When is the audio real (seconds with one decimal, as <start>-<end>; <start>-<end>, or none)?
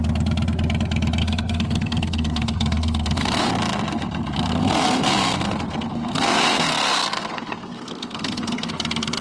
0.0-1.2; 3.5-4.6; 6.7-7.2; 8.7-9.2